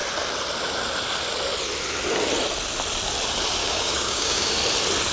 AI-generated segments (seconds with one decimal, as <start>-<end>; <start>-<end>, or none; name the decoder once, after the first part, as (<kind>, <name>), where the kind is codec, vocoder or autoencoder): 3.6-4.5 (codec, DAC)